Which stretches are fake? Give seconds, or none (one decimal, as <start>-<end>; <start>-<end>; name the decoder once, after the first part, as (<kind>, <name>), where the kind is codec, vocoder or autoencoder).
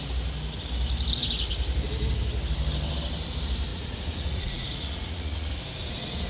3.7-5.5 (vocoder, Vocos)